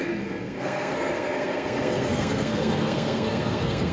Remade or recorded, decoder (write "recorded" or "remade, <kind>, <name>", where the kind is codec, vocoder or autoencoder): remade, codec, SNAC